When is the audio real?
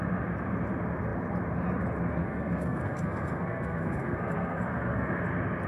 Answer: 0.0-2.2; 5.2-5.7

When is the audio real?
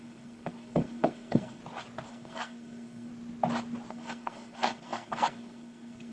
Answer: 1.6-2.1; 3.1-3.9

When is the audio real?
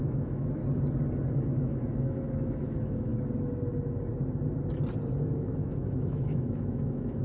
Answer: 0.6-1.3; 3.1-5.2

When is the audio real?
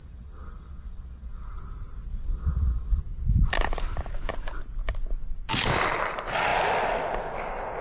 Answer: 1.6-2.1; 3.0-7.8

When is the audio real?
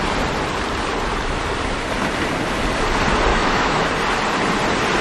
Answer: 0.0-3.3; 3.9-5.0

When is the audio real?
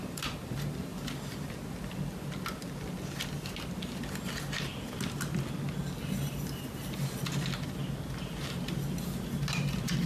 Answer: 0.0-10.1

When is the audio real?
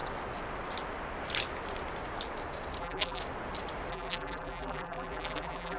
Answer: 0.0-2.8; 3.2-3.9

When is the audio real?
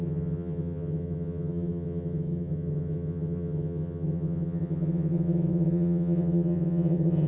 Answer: none